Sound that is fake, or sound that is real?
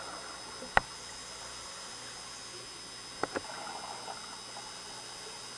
real